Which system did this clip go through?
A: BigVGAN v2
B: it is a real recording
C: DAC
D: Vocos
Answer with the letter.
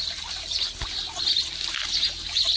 B